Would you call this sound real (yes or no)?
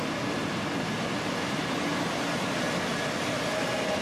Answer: yes